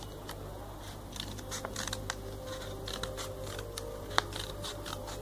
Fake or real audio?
real